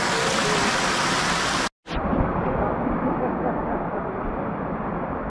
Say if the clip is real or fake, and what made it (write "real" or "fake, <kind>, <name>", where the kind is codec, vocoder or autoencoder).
real